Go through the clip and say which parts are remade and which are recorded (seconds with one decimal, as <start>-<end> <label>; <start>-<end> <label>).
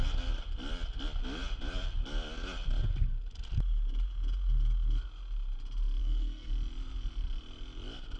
0.0-6.0 recorded; 6.0-6.5 remade; 6.5-8.2 recorded